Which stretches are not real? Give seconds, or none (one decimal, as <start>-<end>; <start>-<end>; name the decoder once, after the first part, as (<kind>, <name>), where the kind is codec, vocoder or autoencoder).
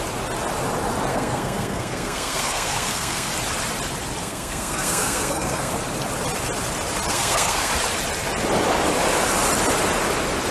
1.1-3.3 (codec, SNAC); 4.2-5.7; 7.1-7.7